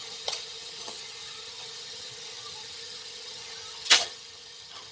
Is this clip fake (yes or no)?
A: yes